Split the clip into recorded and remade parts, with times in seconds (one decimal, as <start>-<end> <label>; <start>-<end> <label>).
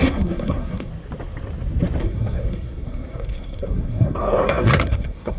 0.0-0.9 remade; 0.9-2.0 recorded; 2.0-5.4 remade